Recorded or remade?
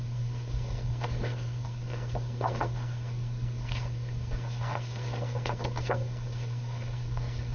remade